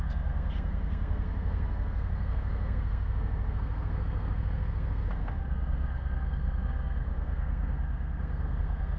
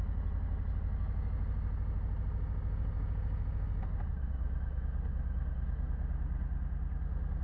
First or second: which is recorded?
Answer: second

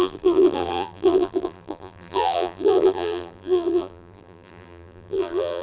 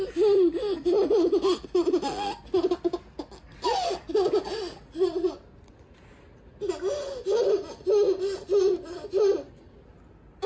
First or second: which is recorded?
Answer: second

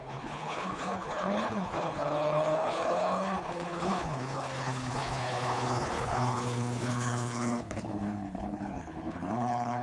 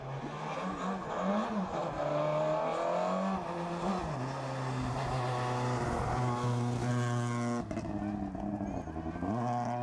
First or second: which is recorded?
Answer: second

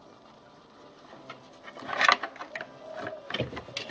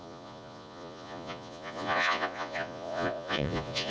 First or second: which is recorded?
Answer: first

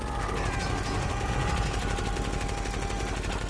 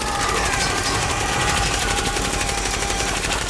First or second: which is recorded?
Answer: first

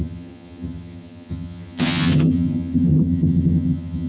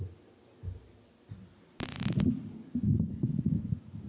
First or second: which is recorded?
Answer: second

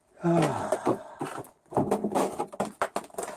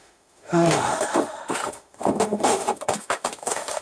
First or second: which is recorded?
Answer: first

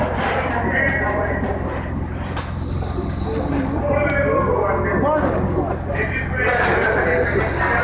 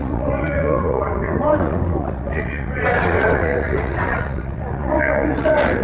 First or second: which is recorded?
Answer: first